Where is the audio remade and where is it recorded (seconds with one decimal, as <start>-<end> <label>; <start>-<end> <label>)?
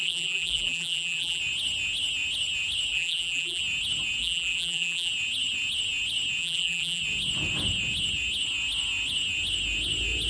0.0-1.4 remade; 1.4-2.9 recorded; 2.9-3.6 remade; 3.6-4.2 recorded; 4.2-5.1 remade; 5.1-6.4 recorded; 6.4-7.0 remade; 7.0-10.3 recorded